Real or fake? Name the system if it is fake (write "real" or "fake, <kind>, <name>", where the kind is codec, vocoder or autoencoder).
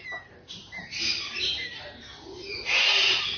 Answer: fake, vocoder, BigVGAN v2